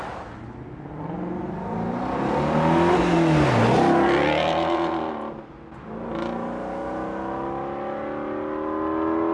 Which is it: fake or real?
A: real